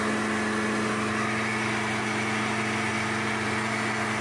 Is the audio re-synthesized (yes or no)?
no